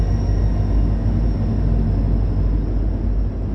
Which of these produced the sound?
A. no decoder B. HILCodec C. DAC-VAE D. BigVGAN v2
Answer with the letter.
A